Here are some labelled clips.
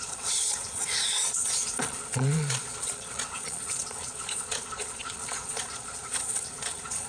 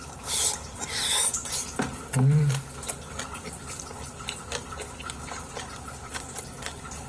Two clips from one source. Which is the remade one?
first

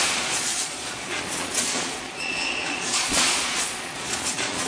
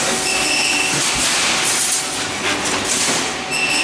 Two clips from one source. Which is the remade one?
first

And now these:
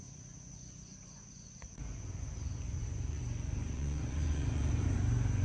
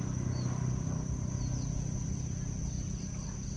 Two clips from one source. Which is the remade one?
first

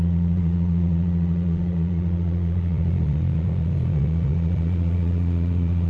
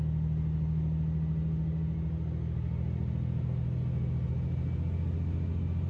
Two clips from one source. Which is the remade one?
first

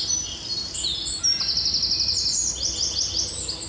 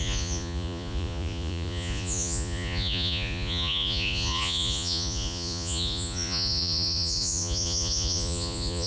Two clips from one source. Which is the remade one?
second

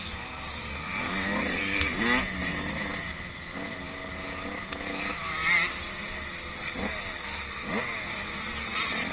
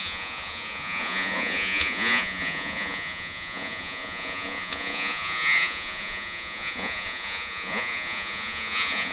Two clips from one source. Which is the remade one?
second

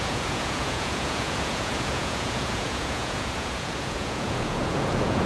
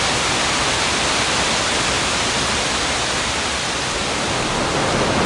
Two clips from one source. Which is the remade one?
first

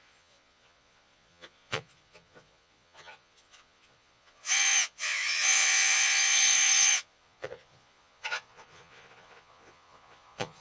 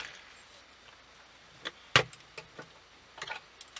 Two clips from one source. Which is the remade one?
first